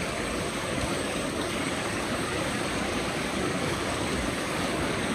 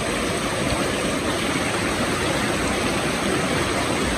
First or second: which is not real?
first